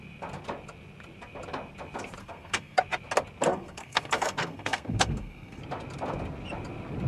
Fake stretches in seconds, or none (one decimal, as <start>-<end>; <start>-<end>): 2.2-2.8; 3.5-5.6